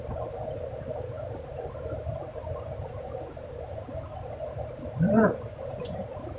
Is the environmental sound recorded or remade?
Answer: remade